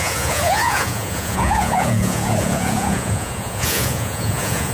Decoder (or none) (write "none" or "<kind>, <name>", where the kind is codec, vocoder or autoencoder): vocoder, Vocos